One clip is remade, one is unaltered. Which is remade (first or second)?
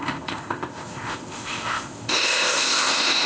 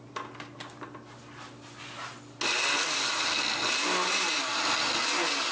first